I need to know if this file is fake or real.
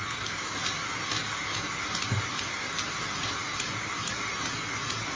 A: real